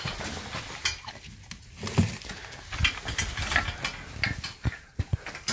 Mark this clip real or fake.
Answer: real